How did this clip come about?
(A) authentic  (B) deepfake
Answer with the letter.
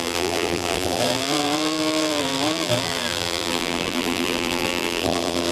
B